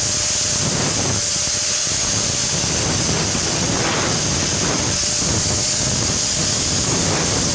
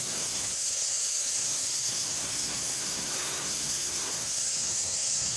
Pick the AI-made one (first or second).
second